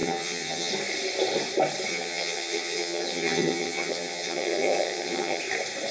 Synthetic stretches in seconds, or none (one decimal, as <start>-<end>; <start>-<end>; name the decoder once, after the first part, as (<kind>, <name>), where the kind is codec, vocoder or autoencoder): 0.0-0.7 (vocoder, HiFi-GAN); 1.9-5.4